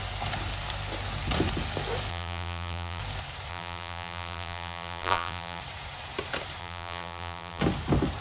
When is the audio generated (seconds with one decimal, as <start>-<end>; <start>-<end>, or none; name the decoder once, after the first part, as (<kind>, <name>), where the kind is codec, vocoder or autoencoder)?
2.1-3.0 (vocoder, BigVGAN v2); 3.5-5.6; 6.6-7.6